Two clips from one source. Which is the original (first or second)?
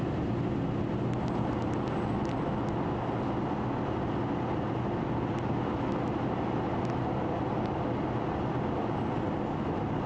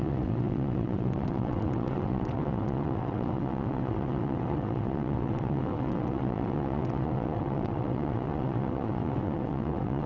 first